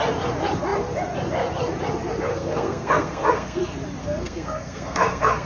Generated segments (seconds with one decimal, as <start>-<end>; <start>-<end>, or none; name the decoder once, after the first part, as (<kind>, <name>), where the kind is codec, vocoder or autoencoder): 2.3-3.6 (codec, SNAC); 4.0-5.5